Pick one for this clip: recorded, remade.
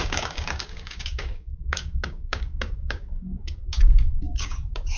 remade